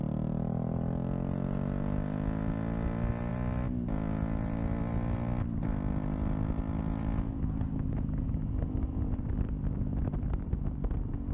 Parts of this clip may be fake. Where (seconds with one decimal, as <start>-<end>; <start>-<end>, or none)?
none